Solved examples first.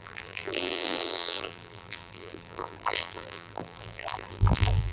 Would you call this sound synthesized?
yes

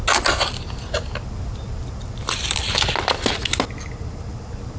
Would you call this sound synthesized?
no